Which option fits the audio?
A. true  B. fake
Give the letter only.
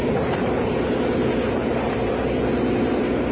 A